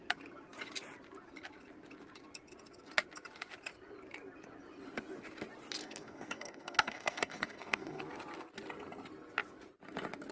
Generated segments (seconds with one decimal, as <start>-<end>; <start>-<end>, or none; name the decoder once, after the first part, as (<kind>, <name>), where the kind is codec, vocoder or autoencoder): 5.8-8.0 (codec, SNAC)